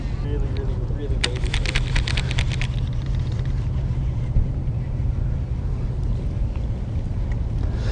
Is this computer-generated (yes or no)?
no